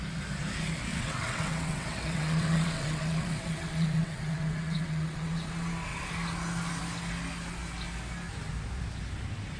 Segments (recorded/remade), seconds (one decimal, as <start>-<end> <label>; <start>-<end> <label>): 0.0-0.9 recorded; 0.9-5.5 remade; 5.5-9.6 recorded